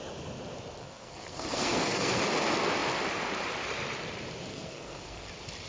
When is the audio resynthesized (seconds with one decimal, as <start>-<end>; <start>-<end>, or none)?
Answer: 0.8-2.2; 4.5-5.3